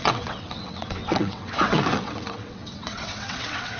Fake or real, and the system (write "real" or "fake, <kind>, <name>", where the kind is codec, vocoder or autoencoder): fake, vocoder, WaveNeXt